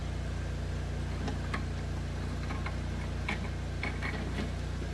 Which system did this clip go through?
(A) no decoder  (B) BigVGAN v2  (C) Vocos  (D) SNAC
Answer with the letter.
A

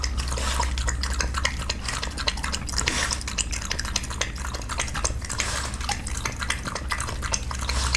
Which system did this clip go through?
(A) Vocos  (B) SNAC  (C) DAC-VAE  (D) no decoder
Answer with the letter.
D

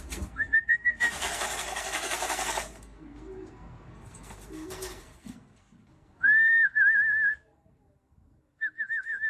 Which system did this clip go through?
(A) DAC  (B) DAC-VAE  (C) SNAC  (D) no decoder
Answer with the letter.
C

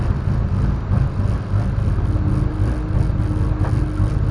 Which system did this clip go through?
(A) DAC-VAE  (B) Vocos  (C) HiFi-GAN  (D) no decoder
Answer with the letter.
D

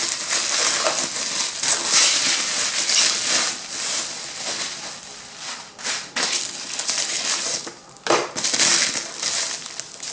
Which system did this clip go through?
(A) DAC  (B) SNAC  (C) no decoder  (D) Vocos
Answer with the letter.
C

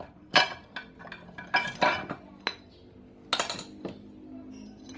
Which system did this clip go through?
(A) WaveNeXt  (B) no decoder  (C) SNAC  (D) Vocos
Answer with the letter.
B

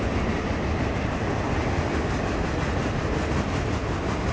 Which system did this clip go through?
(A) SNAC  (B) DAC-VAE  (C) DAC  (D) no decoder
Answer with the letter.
D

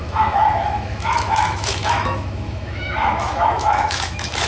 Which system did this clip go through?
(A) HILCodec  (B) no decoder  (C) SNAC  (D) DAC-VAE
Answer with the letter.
D